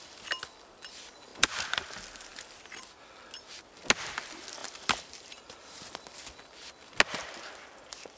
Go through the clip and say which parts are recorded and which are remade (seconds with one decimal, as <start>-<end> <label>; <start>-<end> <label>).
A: 0.0-1.3 recorded; 1.3-1.8 remade; 1.8-4.6 recorded; 4.6-5.8 remade; 5.8-7.2 recorded; 7.2-8.2 remade